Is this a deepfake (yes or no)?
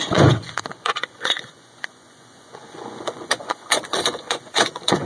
yes